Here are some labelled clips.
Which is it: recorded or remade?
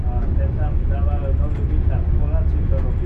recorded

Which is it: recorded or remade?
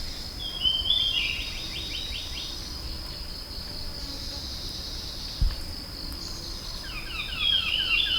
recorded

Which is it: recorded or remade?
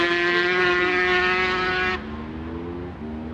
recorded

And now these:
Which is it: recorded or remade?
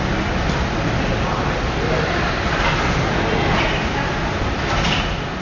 recorded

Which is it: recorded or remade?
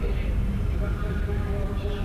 remade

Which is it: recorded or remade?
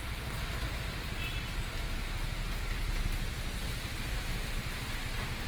recorded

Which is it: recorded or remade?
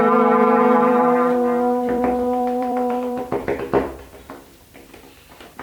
remade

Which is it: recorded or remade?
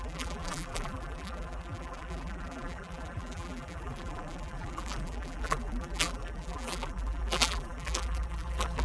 remade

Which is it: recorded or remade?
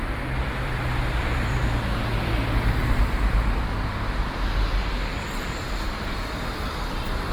remade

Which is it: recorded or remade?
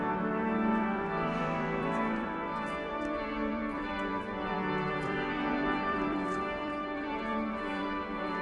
remade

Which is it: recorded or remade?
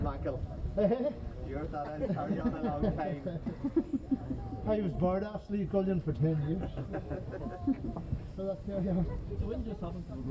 recorded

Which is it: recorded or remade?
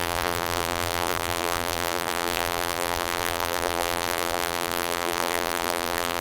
remade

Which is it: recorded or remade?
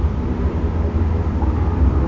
remade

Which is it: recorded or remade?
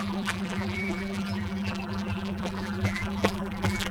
remade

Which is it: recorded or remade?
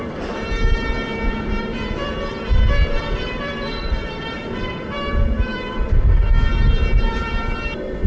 remade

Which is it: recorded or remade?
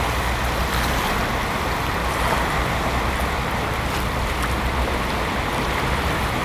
recorded